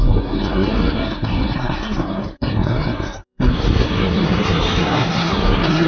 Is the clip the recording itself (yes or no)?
no